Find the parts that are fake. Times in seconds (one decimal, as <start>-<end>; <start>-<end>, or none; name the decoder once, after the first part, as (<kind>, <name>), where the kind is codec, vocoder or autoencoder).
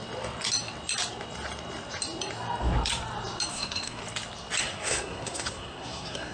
3.5-4.0 (codec, SNAC); 4.6-6.3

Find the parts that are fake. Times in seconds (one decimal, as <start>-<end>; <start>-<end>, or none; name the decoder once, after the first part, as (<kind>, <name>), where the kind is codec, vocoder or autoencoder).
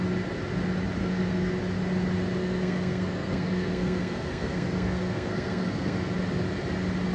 1.0-1.5 (codec, SNAC); 2.4-6.1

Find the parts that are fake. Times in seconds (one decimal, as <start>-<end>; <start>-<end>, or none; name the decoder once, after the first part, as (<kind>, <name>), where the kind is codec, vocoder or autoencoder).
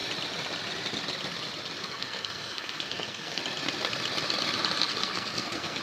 1.8-3.4 (codec, SNAC); 4.9-5.8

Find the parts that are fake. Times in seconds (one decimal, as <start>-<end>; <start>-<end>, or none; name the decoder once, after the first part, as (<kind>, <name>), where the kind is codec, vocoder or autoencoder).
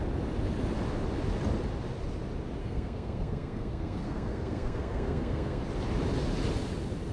2.6-5.6 (codec, SNAC)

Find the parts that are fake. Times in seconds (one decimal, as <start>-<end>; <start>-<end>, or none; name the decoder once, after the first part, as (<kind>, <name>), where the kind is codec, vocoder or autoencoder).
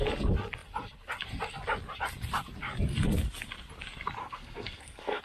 4.2-5.2 (codec, SNAC)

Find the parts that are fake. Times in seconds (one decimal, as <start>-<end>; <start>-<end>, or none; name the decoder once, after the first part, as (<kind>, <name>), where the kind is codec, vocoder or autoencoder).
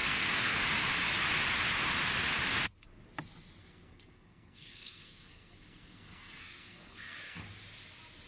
0.0-0.6 (codec, SNAC); 3.6-7.4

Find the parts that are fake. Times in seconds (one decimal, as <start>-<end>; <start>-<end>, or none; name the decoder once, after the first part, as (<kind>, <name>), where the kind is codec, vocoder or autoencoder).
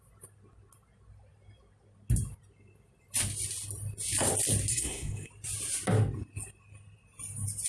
4.7-5.3 (codec, SNAC)